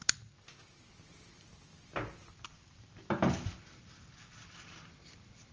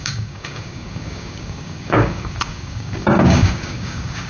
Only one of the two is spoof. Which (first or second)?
second